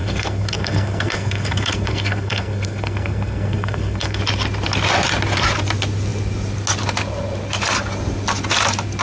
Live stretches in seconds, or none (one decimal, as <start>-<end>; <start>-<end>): 4.2-9.0